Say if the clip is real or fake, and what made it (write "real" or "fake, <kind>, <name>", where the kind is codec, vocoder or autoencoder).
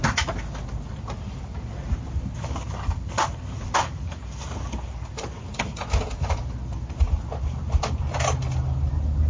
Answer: real